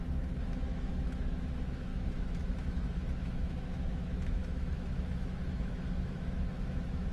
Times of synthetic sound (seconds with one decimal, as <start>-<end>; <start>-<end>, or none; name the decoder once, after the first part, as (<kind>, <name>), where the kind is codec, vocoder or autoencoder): 0.0-7.1 (autoencoder, DAC-VAE)